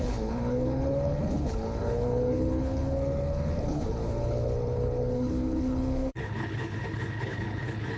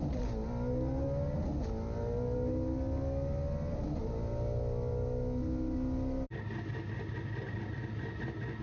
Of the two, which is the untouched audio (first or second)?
second